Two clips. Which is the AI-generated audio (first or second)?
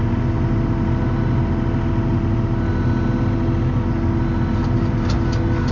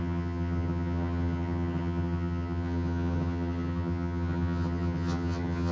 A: second